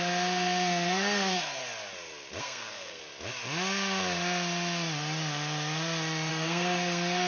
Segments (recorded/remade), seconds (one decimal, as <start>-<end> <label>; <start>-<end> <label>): 0.0-1.6 remade; 1.6-2.4 recorded; 2.4-3.0 remade; 3.0-6.3 recorded; 6.3-7.3 remade